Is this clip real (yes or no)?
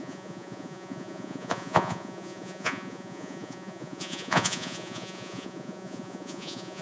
no